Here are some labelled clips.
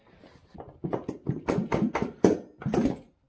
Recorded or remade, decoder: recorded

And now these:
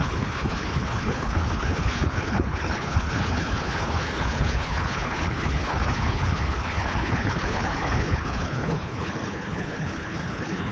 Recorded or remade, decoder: remade, codec, HILCodec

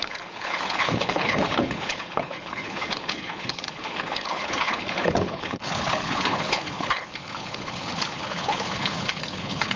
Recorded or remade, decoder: remade, codec, HILCodec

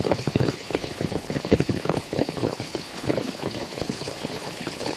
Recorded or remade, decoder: remade, codec, HILCodec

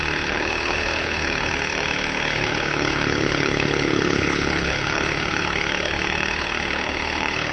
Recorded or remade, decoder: remade, codec, HILCodec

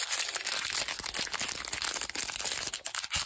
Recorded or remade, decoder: recorded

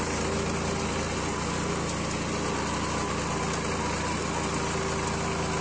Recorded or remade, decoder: recorded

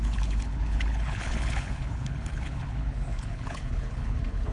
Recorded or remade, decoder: remade, codec, HILCodec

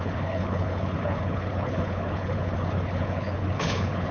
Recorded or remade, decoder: remade, codec, HILCodec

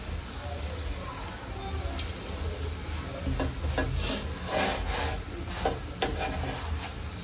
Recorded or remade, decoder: recorded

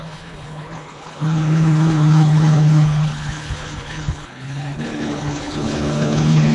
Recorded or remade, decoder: remade, codec, HILCodec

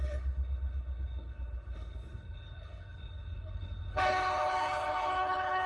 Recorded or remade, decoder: remade, codec, HILCodec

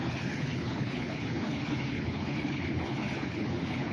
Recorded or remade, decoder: remade, codec, HILCodec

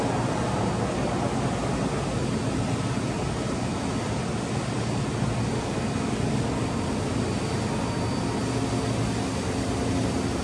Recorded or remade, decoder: recorded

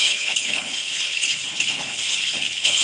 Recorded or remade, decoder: remade, codec, HILCodec